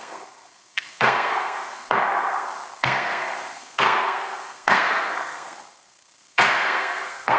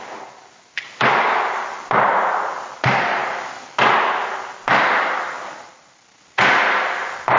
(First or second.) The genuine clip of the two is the second